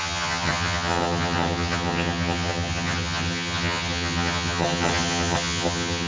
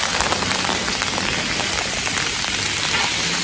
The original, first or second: second